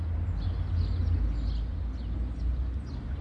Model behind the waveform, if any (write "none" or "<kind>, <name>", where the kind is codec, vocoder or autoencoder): none